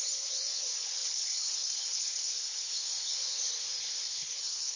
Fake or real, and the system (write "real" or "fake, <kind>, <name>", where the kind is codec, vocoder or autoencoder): fake, codec, HILCodec